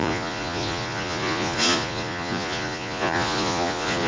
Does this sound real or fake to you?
fake